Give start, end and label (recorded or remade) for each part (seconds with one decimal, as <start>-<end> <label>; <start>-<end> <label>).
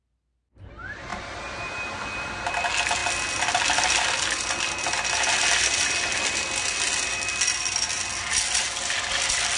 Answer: 0.0-1.1 recorded; 1.1-2.3 remade; 2.3-9.6 recorded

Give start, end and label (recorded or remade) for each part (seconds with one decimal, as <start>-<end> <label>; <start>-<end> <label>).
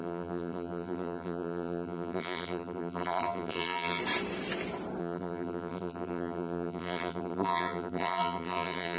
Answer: 0.0-4.0 remade; 4.0-5.0 recorded; 5.0-9.0 remade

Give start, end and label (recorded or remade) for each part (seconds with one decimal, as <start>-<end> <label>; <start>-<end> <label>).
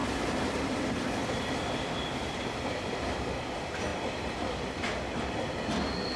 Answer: 0.0-3.3 remade; 3.3-3.9 recorded; 3.9-4.4 remade; 4.4-6.2 recorded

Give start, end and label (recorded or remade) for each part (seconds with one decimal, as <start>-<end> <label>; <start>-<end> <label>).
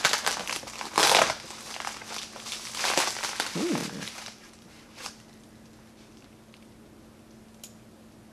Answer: 0.0-3.8 recorded; 3.8-5.0 remade; 5.0-8.3 recorded